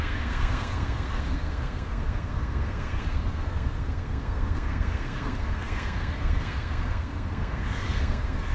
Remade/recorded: remade